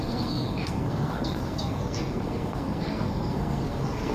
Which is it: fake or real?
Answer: fake